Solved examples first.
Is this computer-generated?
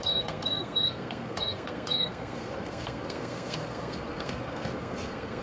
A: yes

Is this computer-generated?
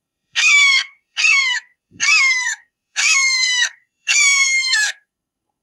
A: yes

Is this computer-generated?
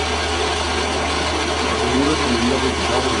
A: no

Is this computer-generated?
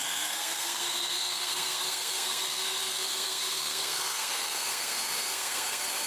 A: yes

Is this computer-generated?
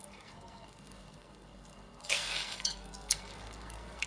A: yes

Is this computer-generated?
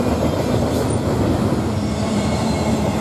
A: no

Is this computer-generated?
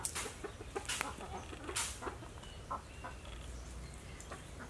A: no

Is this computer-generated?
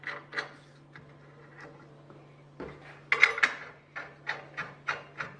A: no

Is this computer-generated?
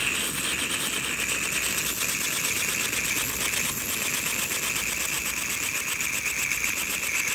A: no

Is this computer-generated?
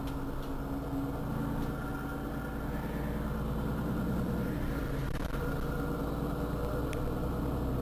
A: no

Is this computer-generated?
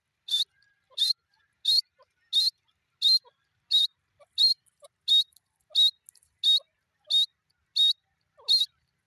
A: no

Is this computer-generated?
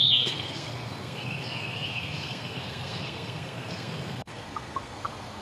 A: yes